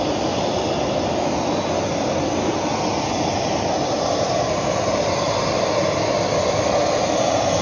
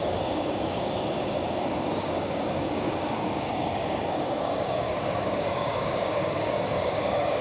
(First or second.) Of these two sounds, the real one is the first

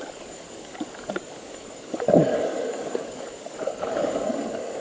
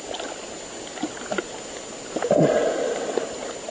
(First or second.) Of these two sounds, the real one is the second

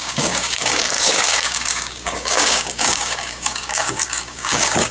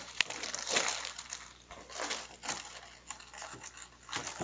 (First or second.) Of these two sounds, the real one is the second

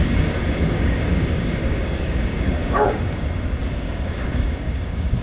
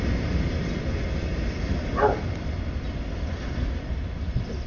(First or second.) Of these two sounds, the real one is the second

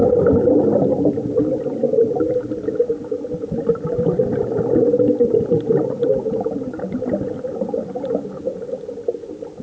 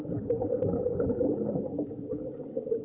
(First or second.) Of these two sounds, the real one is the first